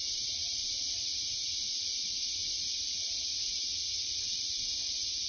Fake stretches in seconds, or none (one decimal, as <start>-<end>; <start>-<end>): 0.0-5.3